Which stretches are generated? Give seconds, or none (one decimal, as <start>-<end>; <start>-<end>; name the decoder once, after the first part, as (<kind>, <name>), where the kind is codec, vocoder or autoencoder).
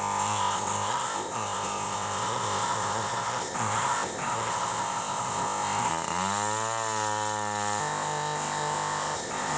0.0-5.9 (codec, ZipCodec); 7.8-9.6